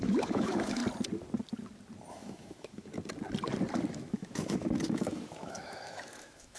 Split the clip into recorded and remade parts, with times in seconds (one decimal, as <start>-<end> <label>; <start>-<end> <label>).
0.0-0.8 remade; 0.8-2.1 recorded; 2.1-2.9 remade; 2.9-3.9 recorded; 3.9-6.6 remade